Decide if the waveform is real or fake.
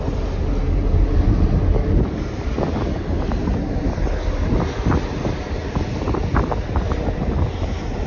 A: real